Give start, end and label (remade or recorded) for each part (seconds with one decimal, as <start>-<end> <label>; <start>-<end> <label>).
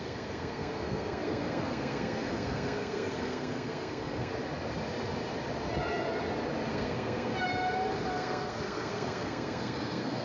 0.0-4.3 remade; 4.3-6.7 recorded; 6.7-7.3 remade; 7.3-8.1 recorded; 8.1-10.2 remade